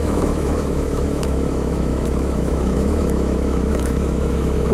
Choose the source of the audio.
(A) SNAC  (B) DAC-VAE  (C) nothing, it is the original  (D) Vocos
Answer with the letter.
B